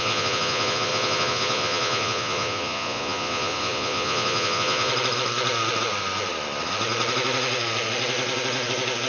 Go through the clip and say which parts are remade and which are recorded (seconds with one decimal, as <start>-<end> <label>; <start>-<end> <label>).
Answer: 0.0-4.9 remade; 4.9-9.1 recorded